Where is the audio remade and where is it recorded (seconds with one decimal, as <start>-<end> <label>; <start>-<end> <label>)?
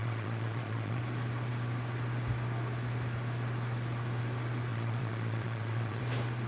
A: 0.0-1.0 remade; 1.0-4.7 recorded; 4.7-6.0 remade; 6.0-6.5 recorded